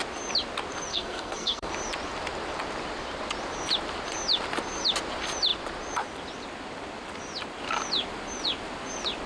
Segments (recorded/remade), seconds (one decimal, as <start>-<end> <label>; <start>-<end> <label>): 0.0-0.9 recorded; 0.9-1.7 remade; 1.7-9.3 recorded